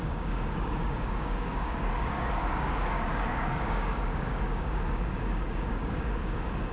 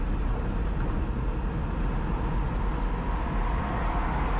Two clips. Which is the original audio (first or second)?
second